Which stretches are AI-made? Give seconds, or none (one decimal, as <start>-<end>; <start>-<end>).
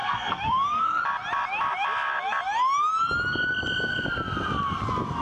0.0-1.0